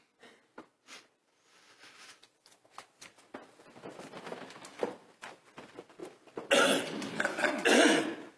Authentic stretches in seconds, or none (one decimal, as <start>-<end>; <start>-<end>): 0.0-8.4